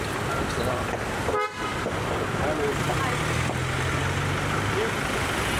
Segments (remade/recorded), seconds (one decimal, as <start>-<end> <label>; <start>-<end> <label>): 0.0-5.6 recorded

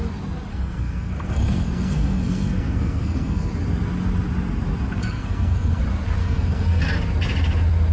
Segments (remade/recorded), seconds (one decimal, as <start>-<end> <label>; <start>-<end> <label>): 0.0-0.5 recorded; 0.5-3.5 remade; 3.5-5.0 recorded; 5.0-5.8 remade; 5.8-6.2 recorded; 6.2-6.8 remade; 6.8-7.9 recorded

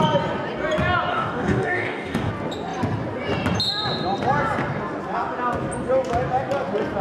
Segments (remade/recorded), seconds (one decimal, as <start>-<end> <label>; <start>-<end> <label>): 0.0-1.1 recorded; 1.1-2.3 remade; 2.3-7.0 recorded

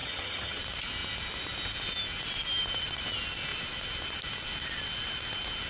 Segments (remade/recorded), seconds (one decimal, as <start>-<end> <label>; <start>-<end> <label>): 0.0-0.6 remade; 0.6-5.7 recorded

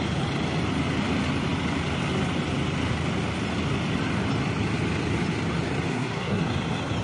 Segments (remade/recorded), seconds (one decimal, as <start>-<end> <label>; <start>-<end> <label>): 0.0-5.9 recorded; 5.9-6.4 remade; 6.4-7.0 recorded

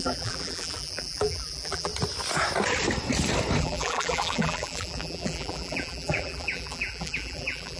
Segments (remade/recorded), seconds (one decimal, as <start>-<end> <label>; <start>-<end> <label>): 0.0-1.9 remade; 1.9-3.6 recorded; 3.6-7.8 remade

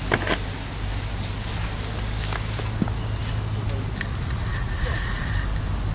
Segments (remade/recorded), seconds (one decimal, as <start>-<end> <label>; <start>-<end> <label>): 0.0-4.1 recorded; 4.1-5.3 remade; 5.3-5.9 recorded